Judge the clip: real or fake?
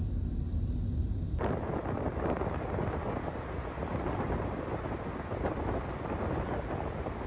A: real